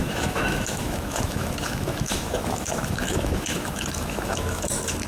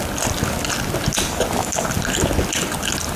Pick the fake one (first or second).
first